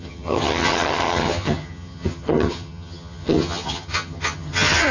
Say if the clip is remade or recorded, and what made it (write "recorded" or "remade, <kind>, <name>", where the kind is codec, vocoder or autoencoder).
remade, vocoder, HiFi-GAN